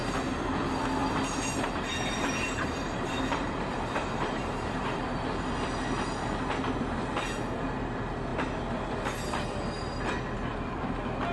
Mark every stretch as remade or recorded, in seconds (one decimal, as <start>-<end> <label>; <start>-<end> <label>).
0.0-1.0 recorded; 1.0-5.5 remade; 5.5-11.3 recorded